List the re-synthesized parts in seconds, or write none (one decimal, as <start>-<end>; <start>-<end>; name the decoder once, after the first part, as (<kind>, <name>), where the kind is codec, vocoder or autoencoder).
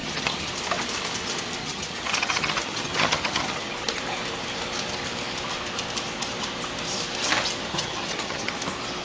0.0-0.5 (vocoder, HiFi-GAN); 1.6-3.7; 7.7-8.5